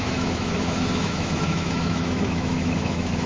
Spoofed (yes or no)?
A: yes